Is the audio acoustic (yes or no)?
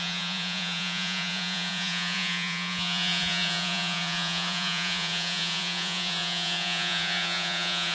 no